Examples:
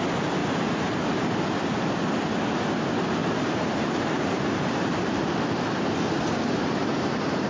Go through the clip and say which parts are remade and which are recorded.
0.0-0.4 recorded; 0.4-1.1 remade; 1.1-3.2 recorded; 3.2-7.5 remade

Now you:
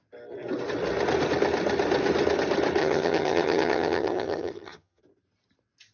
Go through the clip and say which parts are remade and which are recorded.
0.0-2.8 recorded; 2.8-5.0 remade; 5.0-5.9 recorded

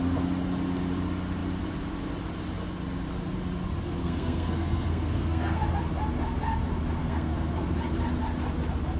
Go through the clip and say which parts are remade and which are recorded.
0.0-4.0 recorded; 4.0-5.7 remade; 5.7-7.0 recorded; 7.0-7.7 remade; 7.7-9.0 recorded

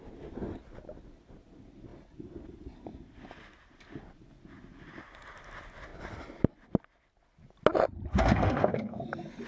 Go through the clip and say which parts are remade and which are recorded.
0.0-8.1 recorded; 8.1-9.0 remade; 9.0-9.5 recorded

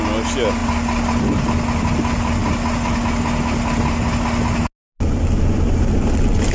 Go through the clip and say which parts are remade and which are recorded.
0.0-6.5 recorded

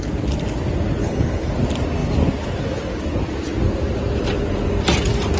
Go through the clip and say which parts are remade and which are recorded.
0.0-1.0 recorded; 1.0-1.5 remade; 1.5-5.4 recorded